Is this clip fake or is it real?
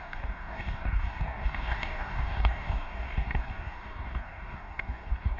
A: fake